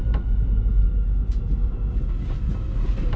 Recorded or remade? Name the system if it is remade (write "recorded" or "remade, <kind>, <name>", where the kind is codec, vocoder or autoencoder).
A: recorded